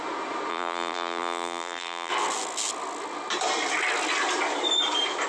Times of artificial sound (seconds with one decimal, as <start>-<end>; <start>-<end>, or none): 0.5-2.1